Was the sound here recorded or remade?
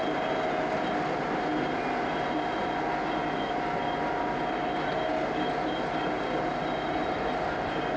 recorded